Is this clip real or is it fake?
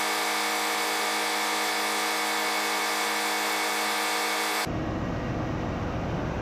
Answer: real